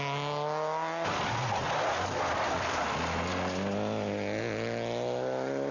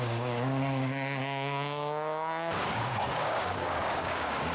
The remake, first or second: second